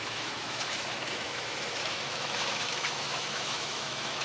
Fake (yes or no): yes